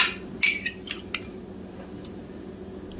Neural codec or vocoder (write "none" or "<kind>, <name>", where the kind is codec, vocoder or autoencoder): none